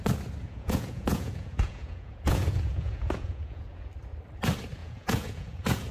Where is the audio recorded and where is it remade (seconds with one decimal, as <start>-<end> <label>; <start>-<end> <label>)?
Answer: 0.0-0.4 recorded; 0.4-3.9 remade; 3.9-4.8 recorded; 4.8-5.9 remade